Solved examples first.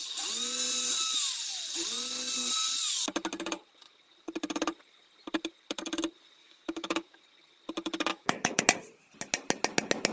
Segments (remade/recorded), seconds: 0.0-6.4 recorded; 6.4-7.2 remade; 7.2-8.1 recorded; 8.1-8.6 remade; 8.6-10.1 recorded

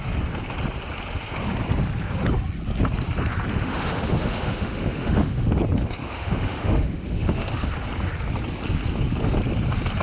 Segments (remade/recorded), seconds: 0.0-3.5 recorded; 3.5-5.5 remade; 5.5-6.0 recorded; 6.0-7.7 remade; 7.7-10.0 recorded

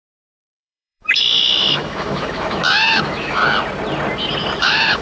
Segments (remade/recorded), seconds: 0.0-3.4 remade; 3.4-4.6 recorded; 4.6-5.0 remade

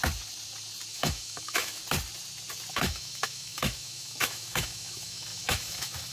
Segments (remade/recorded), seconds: 0.0-0.9 recorded; 0.9-1.8 remade; 1.8-2.7 recorded; 2.7-6.1 remade

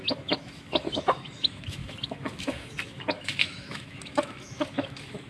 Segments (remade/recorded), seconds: 0.0-5.3 remade

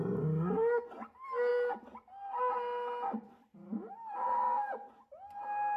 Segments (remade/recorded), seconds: 0.0-5.8 recorded

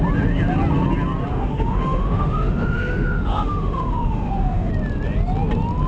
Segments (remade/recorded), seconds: 0.0-1.3 recorded; 1.3-4.7 remade; 4.7-5.9 recorded